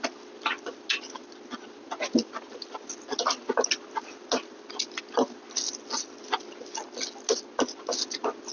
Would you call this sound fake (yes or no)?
no